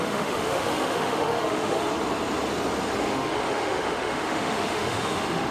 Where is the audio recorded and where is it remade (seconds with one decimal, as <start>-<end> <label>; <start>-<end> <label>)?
0.0-1.9 remade; 1.9-3.0 recorded; 3.0-5.5 remade